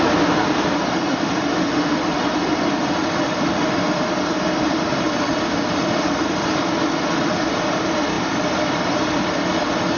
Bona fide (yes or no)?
no